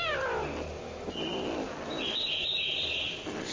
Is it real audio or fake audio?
real